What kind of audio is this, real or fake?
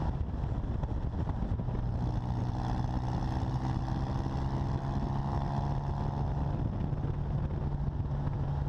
real